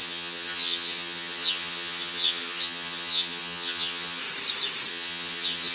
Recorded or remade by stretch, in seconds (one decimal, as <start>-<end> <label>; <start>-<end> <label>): 0.0-4.2 remade; 4.2-4.9 recorded; 4.9-5.7 remade